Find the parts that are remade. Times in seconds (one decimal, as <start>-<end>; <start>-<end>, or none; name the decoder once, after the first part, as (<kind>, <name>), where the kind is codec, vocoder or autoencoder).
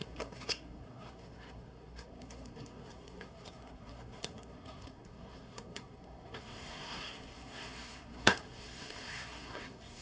0.0-10.0 (codec, SNAC)